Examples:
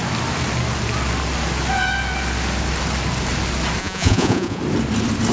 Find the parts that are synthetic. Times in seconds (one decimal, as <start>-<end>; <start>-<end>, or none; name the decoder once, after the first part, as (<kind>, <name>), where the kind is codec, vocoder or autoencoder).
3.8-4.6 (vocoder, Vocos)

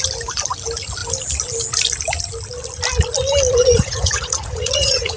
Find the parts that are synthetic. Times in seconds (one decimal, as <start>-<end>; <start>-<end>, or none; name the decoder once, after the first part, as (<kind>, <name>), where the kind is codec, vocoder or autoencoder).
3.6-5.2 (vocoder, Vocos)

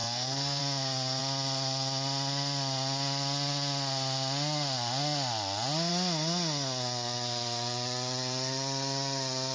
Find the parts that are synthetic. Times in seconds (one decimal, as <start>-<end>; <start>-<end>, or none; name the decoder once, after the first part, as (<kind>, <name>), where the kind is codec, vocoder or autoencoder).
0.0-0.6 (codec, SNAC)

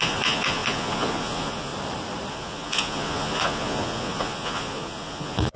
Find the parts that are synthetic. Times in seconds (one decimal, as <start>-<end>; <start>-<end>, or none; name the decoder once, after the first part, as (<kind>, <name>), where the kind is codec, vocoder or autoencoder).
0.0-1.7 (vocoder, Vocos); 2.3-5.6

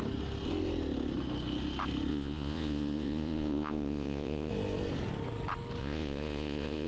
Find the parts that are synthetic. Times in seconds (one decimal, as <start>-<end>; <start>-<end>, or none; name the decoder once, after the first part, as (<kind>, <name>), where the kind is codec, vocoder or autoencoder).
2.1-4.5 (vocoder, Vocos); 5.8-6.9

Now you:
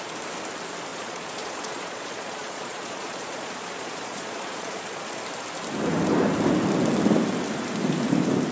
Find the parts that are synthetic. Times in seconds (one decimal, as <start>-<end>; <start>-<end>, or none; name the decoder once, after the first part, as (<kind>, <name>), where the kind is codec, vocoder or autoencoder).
0.9-5.2 (vocoder, Vocos)

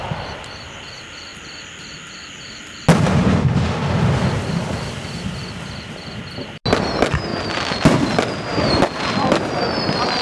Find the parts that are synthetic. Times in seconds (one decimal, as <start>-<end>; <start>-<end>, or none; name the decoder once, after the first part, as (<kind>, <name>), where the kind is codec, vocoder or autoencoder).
none

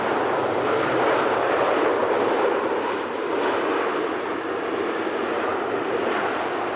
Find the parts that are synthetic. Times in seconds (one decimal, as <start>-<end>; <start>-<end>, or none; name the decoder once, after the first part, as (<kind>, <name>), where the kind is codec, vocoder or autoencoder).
0.4-0.9 (vocoder, BigVGAN v2); 2.0-3.3; 5.5-6.1